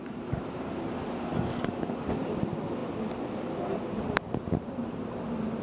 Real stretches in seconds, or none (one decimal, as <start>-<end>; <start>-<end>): 0.0-5.6